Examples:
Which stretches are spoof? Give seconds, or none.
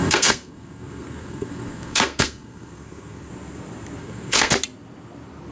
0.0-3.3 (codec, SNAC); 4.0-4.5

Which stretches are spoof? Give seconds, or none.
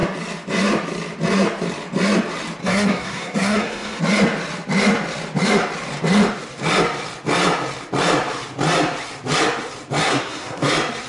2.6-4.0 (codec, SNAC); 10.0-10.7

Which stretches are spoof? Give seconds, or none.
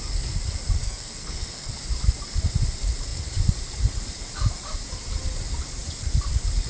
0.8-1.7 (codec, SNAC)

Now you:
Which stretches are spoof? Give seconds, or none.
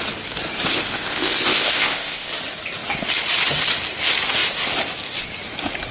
0.7-2.3 (codec, ZipCodec)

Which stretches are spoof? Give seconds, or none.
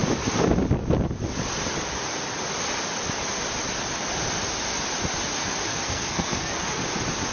5.7-6.8 (codec, SNAC)